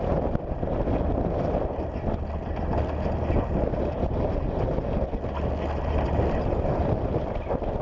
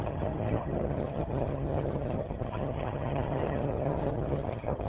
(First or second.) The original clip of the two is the first